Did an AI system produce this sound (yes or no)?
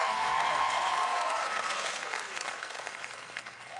yes